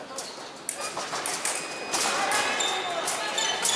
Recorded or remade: recorded